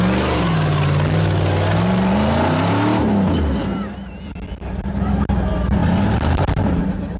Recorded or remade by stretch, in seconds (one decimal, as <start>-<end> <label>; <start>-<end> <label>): 0.0-7.2 recorded